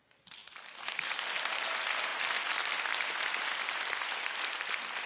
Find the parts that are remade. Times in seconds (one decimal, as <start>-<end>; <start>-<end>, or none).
none